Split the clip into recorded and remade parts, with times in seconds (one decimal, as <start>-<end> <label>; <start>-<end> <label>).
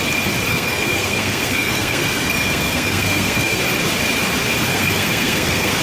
0.0-0.5 recorded; 0.5-3.6 remade; 3.6-4.7 recorded; 4.7-5.8 remade